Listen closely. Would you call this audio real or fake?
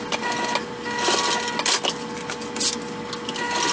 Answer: real